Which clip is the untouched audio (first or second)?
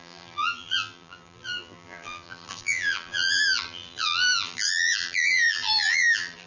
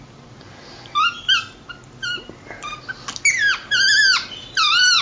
second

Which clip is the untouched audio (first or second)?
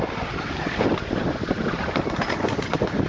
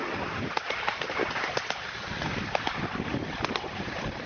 first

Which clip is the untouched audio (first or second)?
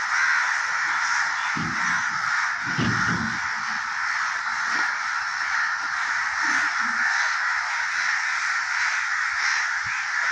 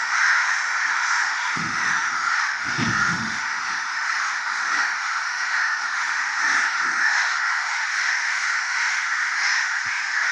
first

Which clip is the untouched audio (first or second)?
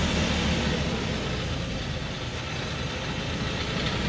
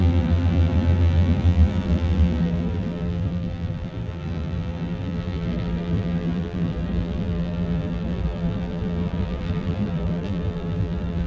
first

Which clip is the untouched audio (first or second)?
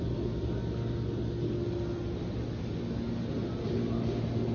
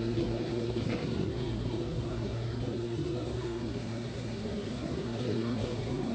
first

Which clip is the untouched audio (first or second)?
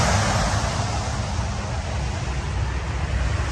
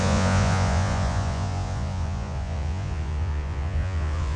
first